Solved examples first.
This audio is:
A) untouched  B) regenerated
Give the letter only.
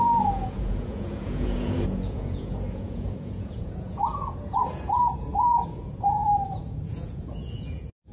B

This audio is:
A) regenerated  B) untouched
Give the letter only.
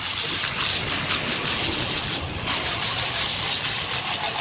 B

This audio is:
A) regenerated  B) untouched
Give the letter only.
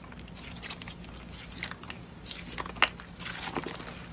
B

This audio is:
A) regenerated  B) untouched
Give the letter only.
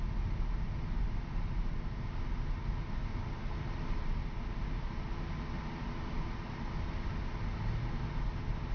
B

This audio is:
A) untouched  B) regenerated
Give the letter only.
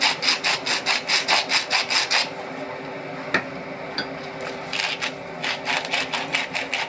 A